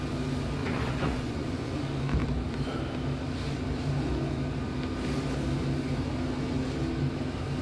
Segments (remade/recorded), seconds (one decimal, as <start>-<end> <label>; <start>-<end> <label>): 0.0-0.6 recorded; 0.6-1.7 remade; 1.7-7.6 recorded